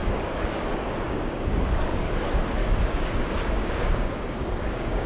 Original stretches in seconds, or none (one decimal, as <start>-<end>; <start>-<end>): 2.1-2.6